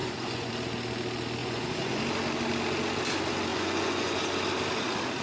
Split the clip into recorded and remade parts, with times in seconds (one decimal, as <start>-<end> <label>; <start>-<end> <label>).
0.0-0.5 remade; 0.5-1.4 recorded; 1.4-2.0 remade; 2.0-3.5 recorded; 3.5-4.2 remade; 4.2-5.2 recorded